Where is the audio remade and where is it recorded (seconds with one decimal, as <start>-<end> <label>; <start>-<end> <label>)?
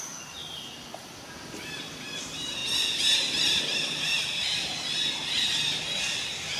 0.0-6.6 recorded